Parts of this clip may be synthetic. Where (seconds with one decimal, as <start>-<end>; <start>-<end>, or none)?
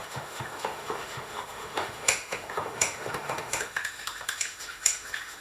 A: 0.0-5.4